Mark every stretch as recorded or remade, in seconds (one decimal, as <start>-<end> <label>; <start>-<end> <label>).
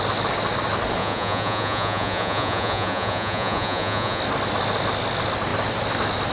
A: 0.0-1.0 recorded; 1.0-4.2 remade; 4.2-6.3 recorded